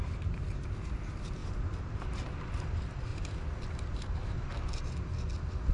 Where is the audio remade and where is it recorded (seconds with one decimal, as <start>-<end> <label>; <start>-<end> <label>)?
0.0-3.1 remade; 3.1-3.6 recorded; 3.6-4.5 remade; 4.5-5.7 recorded